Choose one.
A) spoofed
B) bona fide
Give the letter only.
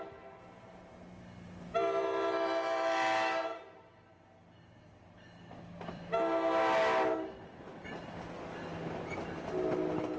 B